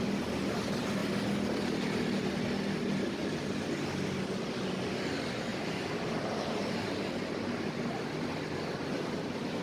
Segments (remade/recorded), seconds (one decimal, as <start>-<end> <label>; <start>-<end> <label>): 0.0-5.5 recorded; 5.5-7.3 remade; 7.3-9.6 recorded